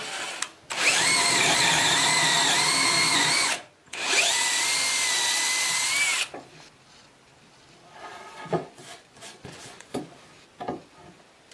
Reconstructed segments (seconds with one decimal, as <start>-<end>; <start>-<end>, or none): 3.1-4.1; 8.1-10.2